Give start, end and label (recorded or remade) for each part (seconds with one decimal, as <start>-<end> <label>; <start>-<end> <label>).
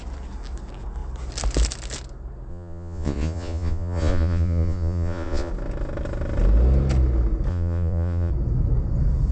0.0-2.5 recorded; 2.5-5.5 remade; 5.5-7.5 recorded; 7.5-8.3 remade; 8.3-9.3 recorded